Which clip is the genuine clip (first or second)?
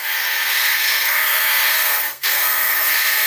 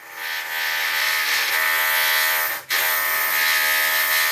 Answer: second